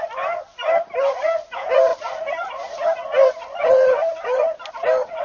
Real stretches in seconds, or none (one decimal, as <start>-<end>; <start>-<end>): 0.0-5.2